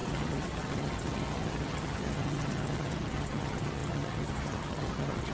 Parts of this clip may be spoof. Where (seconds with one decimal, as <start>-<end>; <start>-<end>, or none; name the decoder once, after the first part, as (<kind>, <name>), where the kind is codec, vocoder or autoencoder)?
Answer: 0.0-5.3 (vocoder, HiFi-GAN)